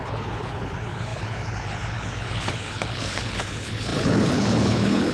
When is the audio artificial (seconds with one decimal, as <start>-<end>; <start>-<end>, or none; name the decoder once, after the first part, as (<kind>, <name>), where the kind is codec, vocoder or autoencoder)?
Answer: 0.0-5.1 (codec, HILCodec)